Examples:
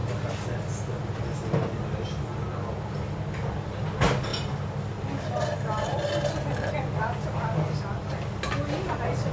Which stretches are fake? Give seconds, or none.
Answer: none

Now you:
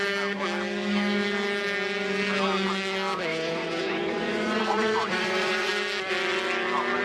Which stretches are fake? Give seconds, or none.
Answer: 3.3-5.7 (vocoder, Vocos)

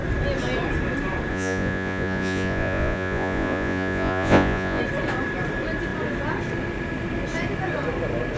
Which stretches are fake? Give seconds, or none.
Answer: 1.3-4.8 (vocoder, Vocos)

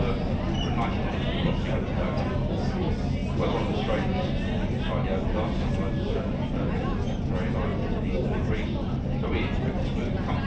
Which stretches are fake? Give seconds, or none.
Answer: none

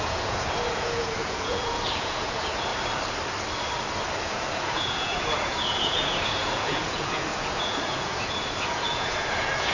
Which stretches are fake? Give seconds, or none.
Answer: 0.0-2.7 (vocoder, Vocos); 4.2-9.7